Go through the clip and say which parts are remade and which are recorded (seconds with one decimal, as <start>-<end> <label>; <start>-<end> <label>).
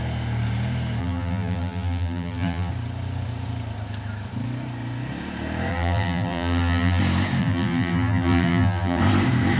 0.0-1.0 recorded; 1.0-2.7 remade; 2.7-5.7 recorded; 5.7-7.0 remade; 7.0-7.4 recorded; 7.4-9.0 remade; 9.0-9.6 recorded